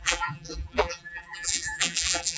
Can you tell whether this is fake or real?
fake